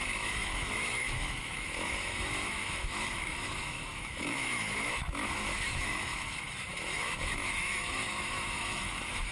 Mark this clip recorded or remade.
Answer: remade